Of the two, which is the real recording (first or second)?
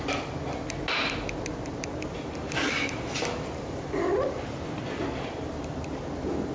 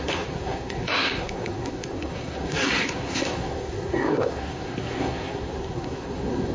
first